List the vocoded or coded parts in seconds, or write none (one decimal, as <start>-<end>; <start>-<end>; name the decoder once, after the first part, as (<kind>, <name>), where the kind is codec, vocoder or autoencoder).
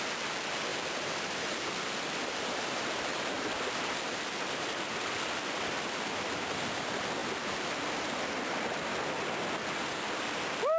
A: 0.7-5.7 (vocoder, BigVGAN v2); 7.2-7.8